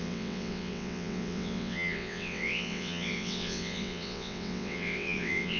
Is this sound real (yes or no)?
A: no